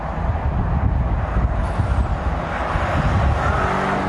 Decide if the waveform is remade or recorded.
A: recorded